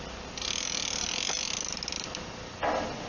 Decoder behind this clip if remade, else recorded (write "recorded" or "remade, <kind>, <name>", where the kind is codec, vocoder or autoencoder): recorded